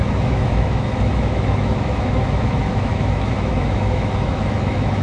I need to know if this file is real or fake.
fake